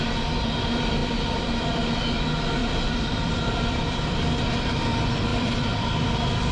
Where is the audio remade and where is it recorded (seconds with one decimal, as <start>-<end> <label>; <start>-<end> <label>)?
0.0-2.6 recorded; 2.6-3.8 remade; 3.8-5.3 recorded; 5.3-6.1 remade; 6.1-6.5 recorded